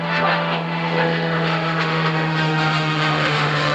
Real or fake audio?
fake